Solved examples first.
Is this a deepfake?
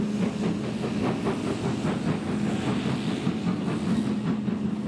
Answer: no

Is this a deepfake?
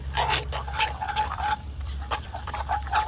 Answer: yes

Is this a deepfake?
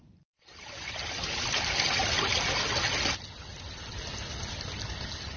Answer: no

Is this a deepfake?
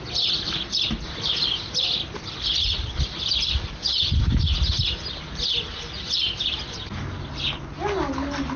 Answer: no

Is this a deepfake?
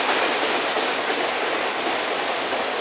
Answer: no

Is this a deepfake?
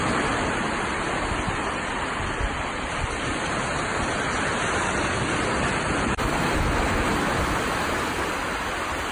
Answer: yes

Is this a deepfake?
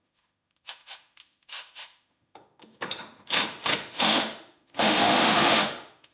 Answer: yes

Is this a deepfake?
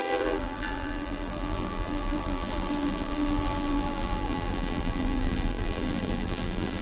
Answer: yes